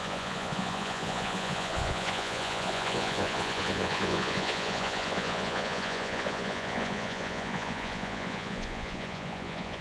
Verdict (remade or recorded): remade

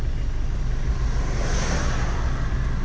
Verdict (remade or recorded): recorded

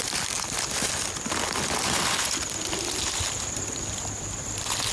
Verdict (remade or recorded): recorded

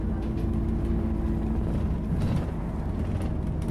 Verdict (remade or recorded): recorded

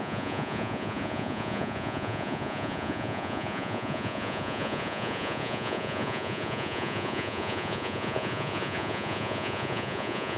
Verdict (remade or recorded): remade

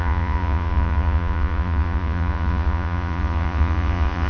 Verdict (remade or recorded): remade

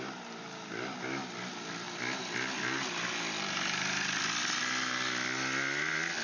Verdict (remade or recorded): recorded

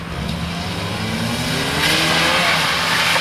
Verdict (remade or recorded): recorded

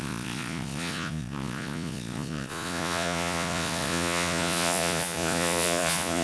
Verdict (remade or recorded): remade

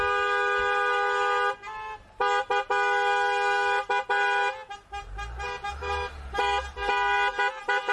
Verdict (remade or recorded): recorded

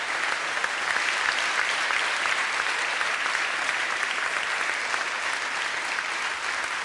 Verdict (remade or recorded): recorded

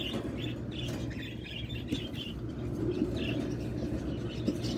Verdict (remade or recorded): recorded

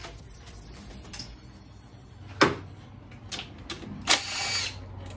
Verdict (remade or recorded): recorded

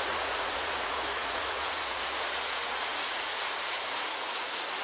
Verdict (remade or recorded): remade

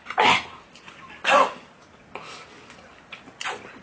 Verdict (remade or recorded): recorded